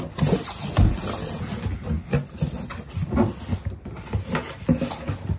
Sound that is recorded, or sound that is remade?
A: recorded